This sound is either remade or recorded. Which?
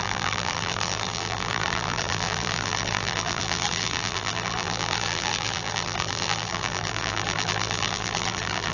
remade